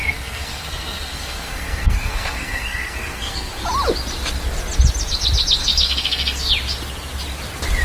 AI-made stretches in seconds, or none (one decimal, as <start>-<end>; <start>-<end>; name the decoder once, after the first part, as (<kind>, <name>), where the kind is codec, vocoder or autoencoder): 0.0-3.6 (codec, SNAC); 5.6-6.5